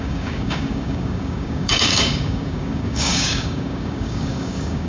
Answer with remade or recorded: remade